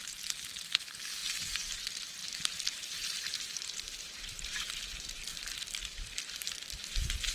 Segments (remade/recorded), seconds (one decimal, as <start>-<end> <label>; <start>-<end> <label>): 0.0-5.3 remade; 5.3-6.2 recorded; 6.2-7.3 remade